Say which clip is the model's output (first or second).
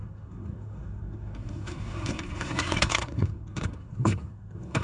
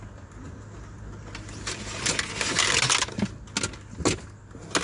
first